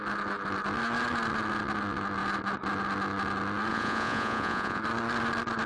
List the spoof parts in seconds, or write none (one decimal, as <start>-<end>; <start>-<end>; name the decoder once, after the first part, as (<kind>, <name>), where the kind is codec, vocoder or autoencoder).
3.7-4.8 (vocoder, Vocos)

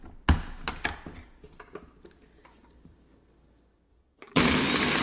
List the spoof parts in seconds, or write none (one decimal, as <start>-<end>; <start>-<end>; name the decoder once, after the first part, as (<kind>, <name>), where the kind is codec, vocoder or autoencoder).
3.9-4.4 (vocoder, Vocos)

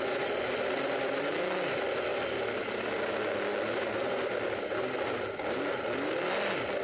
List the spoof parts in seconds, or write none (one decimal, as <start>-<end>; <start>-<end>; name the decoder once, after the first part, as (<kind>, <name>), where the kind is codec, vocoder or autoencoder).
none

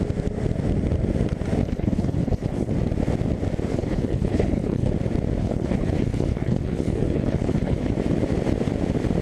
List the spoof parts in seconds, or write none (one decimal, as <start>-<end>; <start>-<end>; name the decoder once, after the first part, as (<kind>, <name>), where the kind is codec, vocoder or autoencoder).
1.6-2.7 (codec, HILCodec); 3.7-4.9; 5.4-7.9

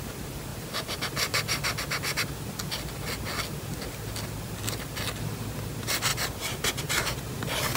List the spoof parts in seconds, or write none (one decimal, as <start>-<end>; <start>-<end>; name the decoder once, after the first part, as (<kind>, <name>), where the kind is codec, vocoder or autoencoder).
none

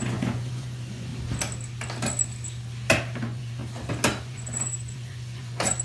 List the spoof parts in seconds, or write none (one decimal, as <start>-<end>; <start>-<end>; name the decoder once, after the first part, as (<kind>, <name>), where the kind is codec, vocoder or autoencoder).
0.0-1.1 (vocoder, Vocos); 3.2-3.6; 4.2-5.8

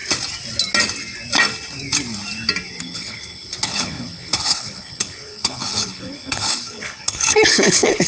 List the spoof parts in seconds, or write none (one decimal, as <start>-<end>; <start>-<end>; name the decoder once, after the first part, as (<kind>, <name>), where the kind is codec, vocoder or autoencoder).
2.8-8.1 (codec, HILCodec)

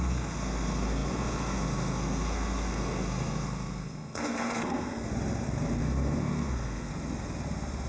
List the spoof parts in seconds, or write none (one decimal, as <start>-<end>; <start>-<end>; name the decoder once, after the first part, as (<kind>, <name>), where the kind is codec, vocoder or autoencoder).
0.0-5.1 (codec, SNAC); 5.8-6.9